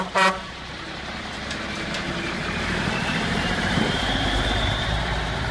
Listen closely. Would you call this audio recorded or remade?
remade